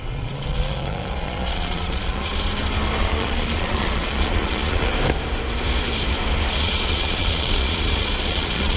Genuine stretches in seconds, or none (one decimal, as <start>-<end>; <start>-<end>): 2.3-3.0; 4.9-6.5